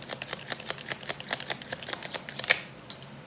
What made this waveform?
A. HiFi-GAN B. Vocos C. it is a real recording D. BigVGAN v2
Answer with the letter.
C